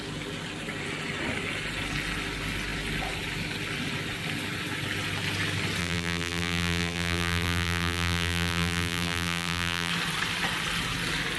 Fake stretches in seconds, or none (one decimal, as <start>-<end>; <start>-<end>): 5.8-9.9